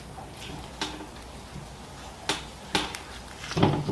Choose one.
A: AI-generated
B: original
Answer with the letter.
B